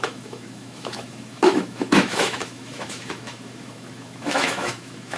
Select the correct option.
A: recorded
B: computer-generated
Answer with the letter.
B